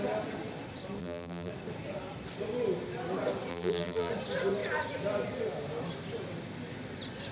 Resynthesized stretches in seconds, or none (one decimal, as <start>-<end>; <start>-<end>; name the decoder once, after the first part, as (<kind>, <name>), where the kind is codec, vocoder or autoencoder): 1.0-1.5 (vocoder, BigVGAN v2); 3.5-4.1